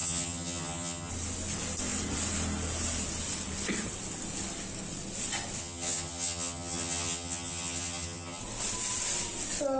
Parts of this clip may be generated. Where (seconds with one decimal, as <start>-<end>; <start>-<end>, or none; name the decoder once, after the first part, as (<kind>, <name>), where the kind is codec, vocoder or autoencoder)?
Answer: 0.0-1.1 (vocoder, HiFi-GAN); 5.6-8.4

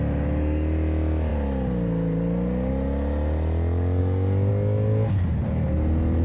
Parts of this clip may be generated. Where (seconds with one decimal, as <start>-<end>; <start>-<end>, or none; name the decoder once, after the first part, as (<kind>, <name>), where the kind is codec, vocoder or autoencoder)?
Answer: 4.0-4.5 (codec, DAC)

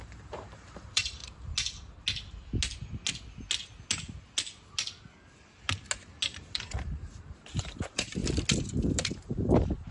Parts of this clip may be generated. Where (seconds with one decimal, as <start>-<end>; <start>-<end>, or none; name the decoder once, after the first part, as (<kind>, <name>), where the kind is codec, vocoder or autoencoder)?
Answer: 0.0-1.2 (vocoder, BigVGAN v2); 6.3-8.2; 8.7-9.9

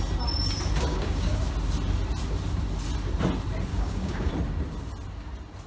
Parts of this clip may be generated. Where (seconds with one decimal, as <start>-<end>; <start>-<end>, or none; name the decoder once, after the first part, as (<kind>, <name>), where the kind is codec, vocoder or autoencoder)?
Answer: 0.9-1.4 (codec, DAC); 3.7-4.3

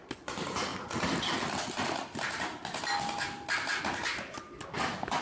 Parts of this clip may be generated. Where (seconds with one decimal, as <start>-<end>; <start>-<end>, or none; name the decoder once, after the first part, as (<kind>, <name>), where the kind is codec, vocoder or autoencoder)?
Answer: none

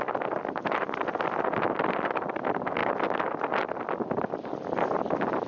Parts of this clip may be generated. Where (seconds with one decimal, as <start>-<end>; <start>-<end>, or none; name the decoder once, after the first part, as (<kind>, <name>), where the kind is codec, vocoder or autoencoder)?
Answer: none